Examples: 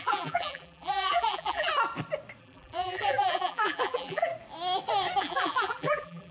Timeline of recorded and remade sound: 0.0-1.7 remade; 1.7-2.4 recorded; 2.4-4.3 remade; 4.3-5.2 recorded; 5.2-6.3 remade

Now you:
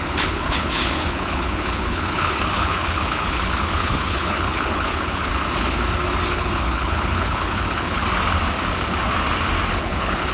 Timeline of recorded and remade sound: 0.0-5.3 remade; 5.3-6.3 recorded; 6.3-8.0 remade; 8.0-9.7 recorded; 9.7-10.3 remade

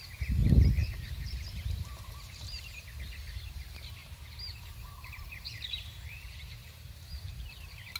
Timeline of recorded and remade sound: 0.0-0.8 recorded; 0.8-2.6 remade; 2.6-4.0 recorded; 4.0-8.0 remade

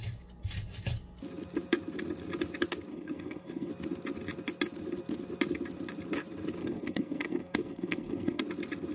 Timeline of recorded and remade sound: 0.0-2.9 recorded; 2.9-3.7 remade; 3.7-6.6 recorded; 6.6-8.4 remade; 8.4-8.9 recorded

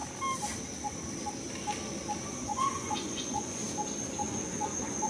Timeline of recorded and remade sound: 0.0-2.2 recorded; 2.2-3.6 remade; 3.6-4.1 recorded; 4.1-5.1 remade

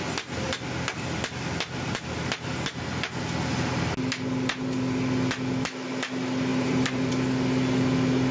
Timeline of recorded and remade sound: 0.0-6.5 recorded; 6.5-7.1 remade; 7.1-8.3 recorded

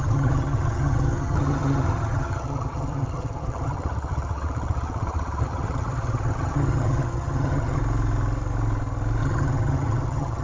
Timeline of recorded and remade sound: 0.0-7.8 remade; 7.8-9.2 recorded; 9.2-10.4 remade

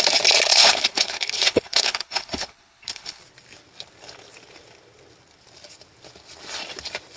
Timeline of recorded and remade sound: 0.0-0.5 recorded; 0.5-3.2 remade; 3.2-7.2 recorded